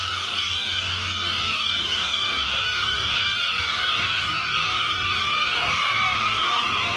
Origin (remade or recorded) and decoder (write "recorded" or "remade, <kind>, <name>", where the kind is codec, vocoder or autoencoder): remade, codec, DAC